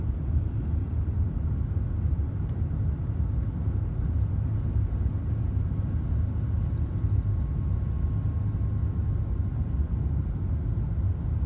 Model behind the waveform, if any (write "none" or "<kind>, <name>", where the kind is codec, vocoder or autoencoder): none